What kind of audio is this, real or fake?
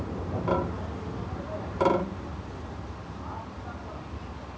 real